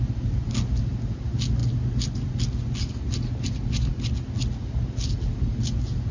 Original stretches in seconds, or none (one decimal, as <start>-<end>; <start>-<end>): 0.0-6.1

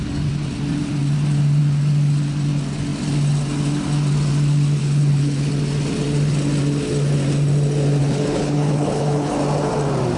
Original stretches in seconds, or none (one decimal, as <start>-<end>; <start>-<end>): 0.0-4.8; 5.5-8.0; 9.3-10.2

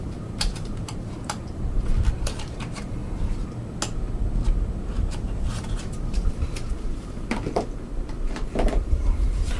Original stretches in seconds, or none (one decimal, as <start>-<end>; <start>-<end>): 3.0-5.5